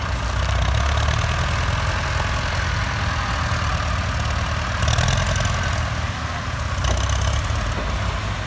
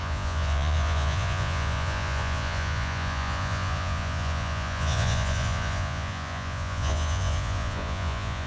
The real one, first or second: first